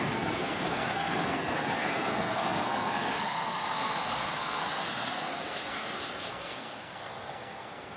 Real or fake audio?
fake